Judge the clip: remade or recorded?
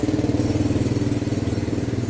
recorded